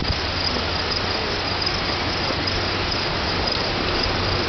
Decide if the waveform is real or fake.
real